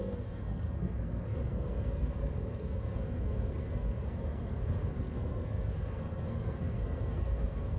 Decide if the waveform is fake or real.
fake